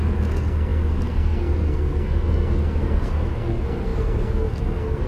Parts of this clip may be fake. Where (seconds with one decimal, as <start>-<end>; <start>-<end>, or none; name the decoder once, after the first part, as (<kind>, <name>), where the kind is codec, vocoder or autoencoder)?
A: 0.0-5.1 (codec, SNAC)